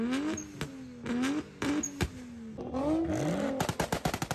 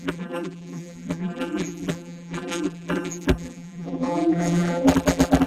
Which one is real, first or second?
first